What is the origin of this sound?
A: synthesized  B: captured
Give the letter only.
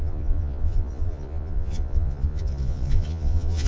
A